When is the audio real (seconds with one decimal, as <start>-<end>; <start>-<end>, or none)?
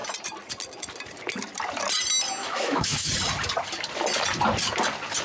0.0-2.4; 3.1-5.2